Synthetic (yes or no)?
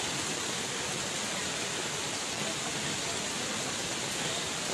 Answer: no